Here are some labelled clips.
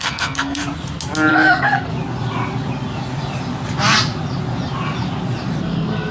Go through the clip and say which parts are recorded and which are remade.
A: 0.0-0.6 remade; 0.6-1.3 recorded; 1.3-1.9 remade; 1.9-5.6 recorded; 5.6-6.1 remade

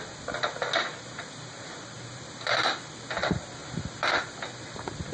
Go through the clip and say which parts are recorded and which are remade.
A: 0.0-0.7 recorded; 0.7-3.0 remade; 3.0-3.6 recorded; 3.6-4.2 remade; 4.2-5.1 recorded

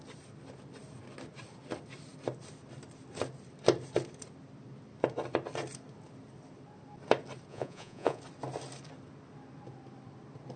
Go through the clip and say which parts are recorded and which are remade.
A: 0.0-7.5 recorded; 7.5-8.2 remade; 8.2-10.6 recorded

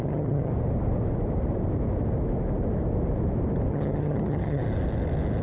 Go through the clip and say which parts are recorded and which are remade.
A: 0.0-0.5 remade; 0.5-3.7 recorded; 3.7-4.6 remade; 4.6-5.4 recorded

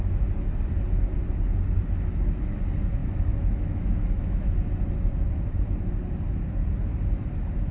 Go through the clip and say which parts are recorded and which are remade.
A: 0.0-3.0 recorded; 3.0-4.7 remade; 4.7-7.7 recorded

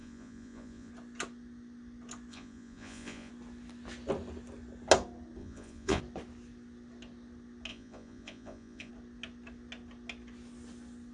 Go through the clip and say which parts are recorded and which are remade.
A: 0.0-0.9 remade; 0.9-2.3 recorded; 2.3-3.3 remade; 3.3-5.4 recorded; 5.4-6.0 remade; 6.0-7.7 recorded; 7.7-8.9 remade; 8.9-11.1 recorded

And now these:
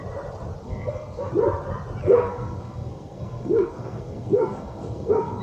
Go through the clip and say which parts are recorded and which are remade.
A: 0.0-0.6 recorded; 0.6-1.3 remade; 1.3-2.0 recorded; 2.0-5.4 remade